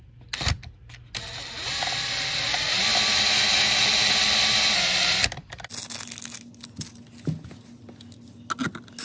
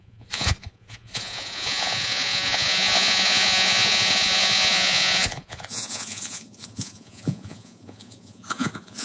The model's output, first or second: second